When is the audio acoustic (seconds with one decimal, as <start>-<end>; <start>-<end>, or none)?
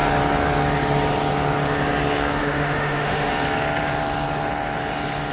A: 0.0-2.4; 3.3-5.3